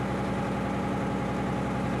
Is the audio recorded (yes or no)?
yes